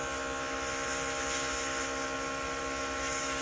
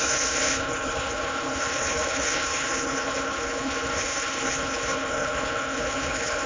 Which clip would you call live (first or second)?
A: first